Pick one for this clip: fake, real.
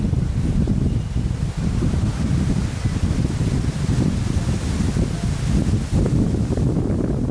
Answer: real